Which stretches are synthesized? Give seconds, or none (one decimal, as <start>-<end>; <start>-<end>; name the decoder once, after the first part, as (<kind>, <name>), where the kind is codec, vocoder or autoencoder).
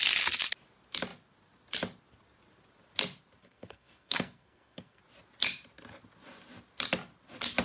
3.4-5.0 (codec, SNAC)